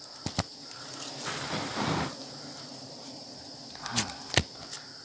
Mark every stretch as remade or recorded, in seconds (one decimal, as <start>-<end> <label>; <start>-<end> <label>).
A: 0.0-2.2 recorded; 2.2-3.3 remade; 3.3-5.0 recorded